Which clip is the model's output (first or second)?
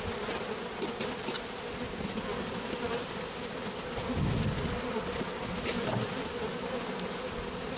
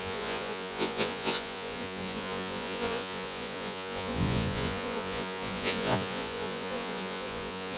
second